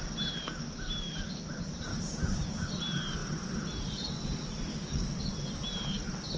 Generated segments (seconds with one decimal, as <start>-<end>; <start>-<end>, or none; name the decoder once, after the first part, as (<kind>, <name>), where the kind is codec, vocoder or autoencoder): 1.9-2.7 (codec, DAC); 4.7-5.2